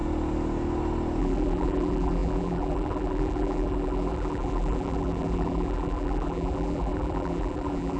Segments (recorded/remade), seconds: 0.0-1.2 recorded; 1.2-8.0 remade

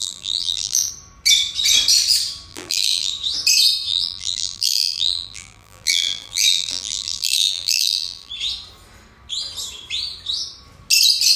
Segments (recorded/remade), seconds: 0.0-0.9 remade; 0.9-2.5 recorded; 2.5-3.1 remade; 3.1-3.9 recorded; 3.9-8.3 remade; 8.3-11.4 recorded

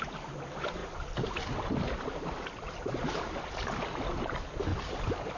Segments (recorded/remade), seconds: 0.0-5.4 recorded

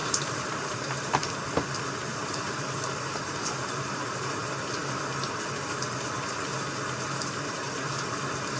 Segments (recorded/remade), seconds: 0.0-1.3 remade; 1.3-2.1 recorded; 2.1-4.0 remade; 4.0-8.6 recorded

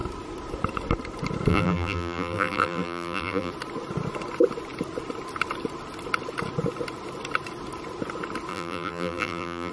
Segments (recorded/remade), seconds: 0.0-1.5 recorded; 1.5-3.5 remade; 3.5-8.5 recorded; 8.5-9.7 remade